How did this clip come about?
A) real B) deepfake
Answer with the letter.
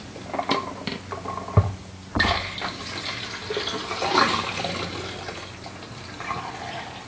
A